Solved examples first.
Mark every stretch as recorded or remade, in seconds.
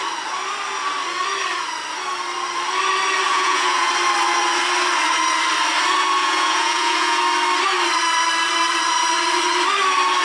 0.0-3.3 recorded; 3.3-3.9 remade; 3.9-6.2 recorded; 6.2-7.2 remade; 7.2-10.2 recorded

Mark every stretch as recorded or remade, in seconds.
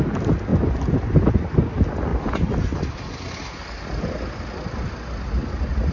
0.0-5.9 recorded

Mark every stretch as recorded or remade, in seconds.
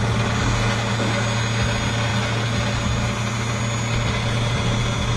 0.0-5.2 recorded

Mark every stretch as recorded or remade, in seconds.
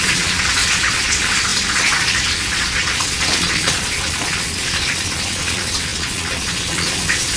0.0-7.4 remade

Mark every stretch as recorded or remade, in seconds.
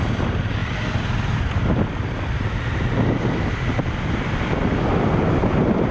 0.0-5.9 recorded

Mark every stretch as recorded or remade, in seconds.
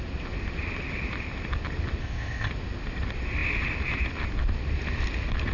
0.0-2.0 recorded; 2.0-2.5 remade; 2.5-5.5 recorded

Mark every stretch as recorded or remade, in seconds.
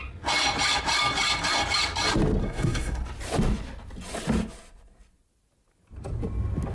0.0-2.4 recorded; 2.4-3.0 remade; 3.0-6.7 recorded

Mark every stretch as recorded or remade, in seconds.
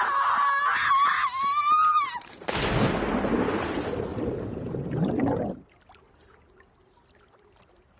0.0-4.1 recorded; 4.1-5.6 remade; 5.6-8.0 recorded